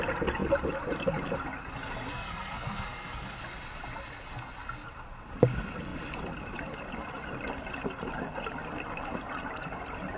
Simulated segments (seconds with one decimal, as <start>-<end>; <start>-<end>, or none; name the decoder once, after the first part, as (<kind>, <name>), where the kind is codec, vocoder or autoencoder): 2.1-3.4 (codec, SNAC)